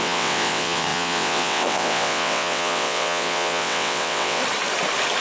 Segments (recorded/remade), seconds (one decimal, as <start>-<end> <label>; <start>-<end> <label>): 0.0-4.4 remade; 4.4-5.2 recorded